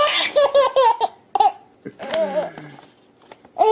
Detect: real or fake real